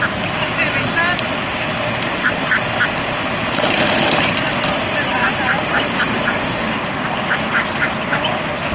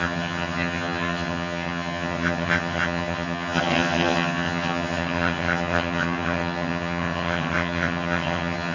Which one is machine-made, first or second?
second